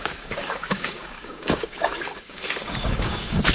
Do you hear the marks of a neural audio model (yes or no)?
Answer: yes